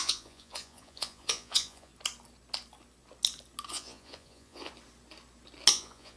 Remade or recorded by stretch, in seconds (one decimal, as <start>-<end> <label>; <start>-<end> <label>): 0.0-1.9 remade; 1.9-3.7 recorded; 3.7-4.7 remade; 4.7-5.7 recorded; 5.7-6.2 remade